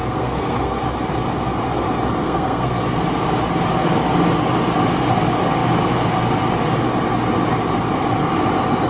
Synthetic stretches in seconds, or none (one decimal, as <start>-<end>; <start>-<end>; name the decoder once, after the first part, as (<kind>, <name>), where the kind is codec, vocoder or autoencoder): 0.0-0.8 (codec, SNAC); 2.2-2.8